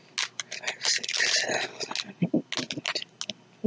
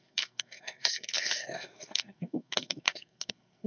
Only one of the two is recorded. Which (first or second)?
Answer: first